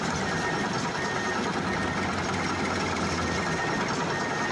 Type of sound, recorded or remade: recorded